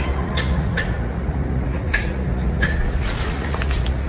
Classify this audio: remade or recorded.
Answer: remade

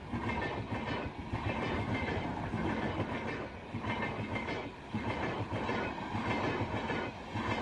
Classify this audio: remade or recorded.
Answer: recorded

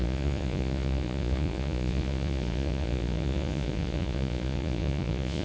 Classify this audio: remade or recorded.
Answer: remade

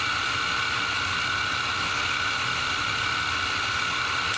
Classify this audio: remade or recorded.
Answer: recorded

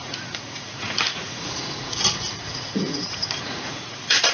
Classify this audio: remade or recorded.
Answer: remade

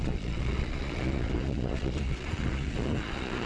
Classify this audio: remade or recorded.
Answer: remade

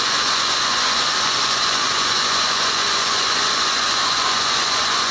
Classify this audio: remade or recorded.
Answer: remade